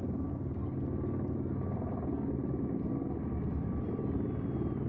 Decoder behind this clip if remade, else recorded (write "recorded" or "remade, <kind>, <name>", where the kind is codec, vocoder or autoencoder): recorded